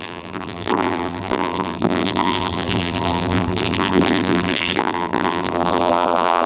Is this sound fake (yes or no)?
yes